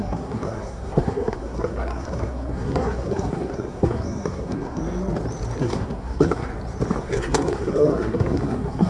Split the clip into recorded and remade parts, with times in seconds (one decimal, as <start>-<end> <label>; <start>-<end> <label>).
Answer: 0.0-4.8 remade; 4.8-5.6 recorded; 5.6-6.5 remade; 6.5-7.0 recorded; 7.0-8.9 remade